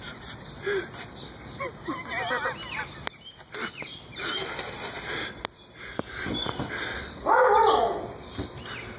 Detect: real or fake real